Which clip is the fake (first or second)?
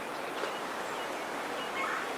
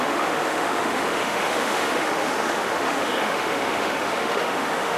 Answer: second